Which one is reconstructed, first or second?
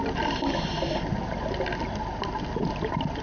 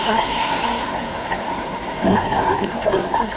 second